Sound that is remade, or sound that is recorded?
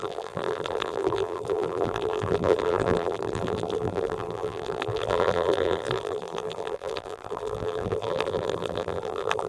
remade